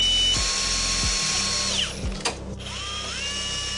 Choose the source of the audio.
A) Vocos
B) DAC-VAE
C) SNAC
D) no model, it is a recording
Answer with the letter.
D